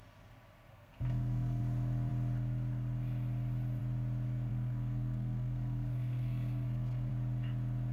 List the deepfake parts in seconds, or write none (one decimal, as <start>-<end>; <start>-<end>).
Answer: 0.7-1.6; 4.5-7.1